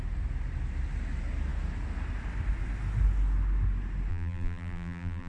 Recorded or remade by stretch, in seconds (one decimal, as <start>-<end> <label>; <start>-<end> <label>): 0.0-4.1 recorded; 4.1-5.3 remade